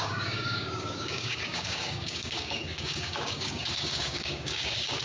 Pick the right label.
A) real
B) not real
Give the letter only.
B